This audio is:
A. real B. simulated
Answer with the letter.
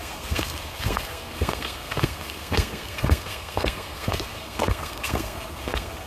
B